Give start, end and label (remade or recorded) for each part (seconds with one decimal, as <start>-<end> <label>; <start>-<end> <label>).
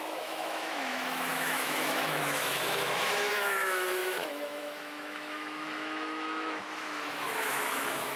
0.0-8.2 remade